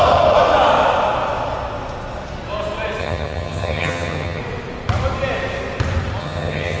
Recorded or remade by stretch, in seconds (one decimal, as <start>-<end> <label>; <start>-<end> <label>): 0.0-3.0 recorded; 3.0-4.4 remade; 4.4-6.2 recorded; 6.2-6.8 remade